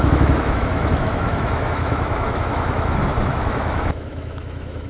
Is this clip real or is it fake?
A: fake